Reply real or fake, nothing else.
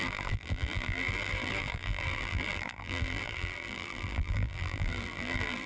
fake